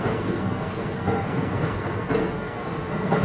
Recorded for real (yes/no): no